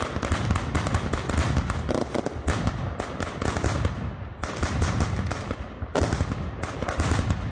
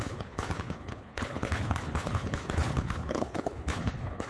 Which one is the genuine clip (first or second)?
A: first